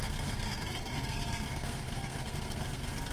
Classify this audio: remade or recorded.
remade